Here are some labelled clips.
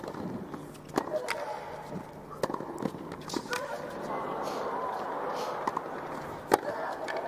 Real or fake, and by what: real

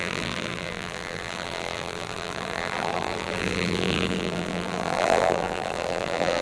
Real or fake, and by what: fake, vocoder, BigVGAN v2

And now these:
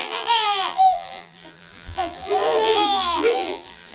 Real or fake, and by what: fake, vocoder, BigVGAN v2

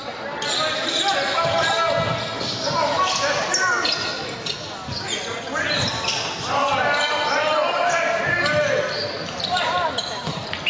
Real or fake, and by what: real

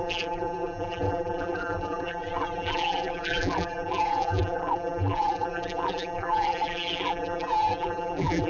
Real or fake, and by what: fake, vocoder, BigVGAN v2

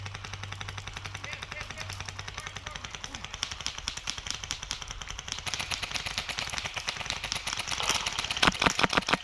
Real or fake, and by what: real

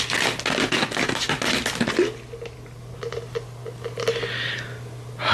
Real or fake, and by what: real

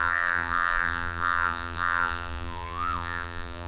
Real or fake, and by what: fake, vocoder, BigVGAN v2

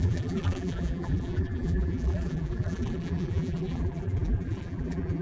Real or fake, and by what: fake, vocoder, BigVGAN v2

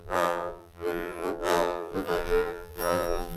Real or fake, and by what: fake, vocoder, BigVGAN v2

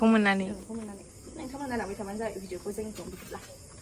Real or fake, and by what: real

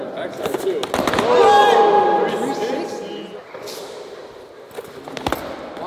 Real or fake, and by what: real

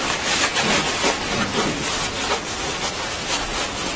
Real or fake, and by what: real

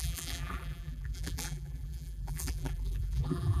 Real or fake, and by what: fake, vocoder, BigVGAN v2